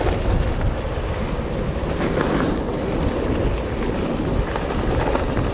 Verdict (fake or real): real